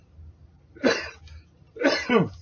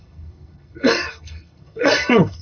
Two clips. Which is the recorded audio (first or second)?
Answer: first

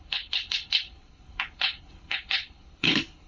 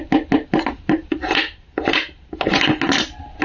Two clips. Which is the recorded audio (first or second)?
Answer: second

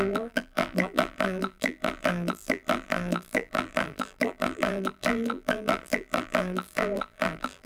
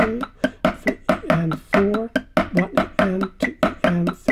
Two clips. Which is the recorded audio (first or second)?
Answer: second